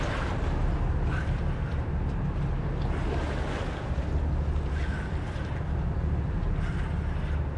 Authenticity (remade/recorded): recorded